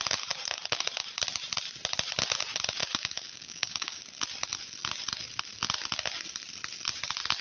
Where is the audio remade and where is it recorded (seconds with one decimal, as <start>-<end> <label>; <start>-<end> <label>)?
0.0-2.8 recorded; 2.8-4.0 remade; 4.0-7.4 recorded